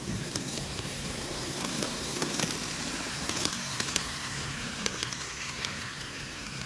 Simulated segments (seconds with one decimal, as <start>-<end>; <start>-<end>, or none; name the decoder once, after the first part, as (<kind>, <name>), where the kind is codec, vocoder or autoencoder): 0.0-2.4 (codec, SNAC); 3.1-6.7